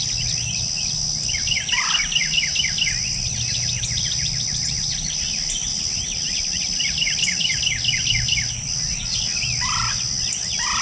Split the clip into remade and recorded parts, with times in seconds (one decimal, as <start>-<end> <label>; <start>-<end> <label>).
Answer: 0.0-10.8 recorded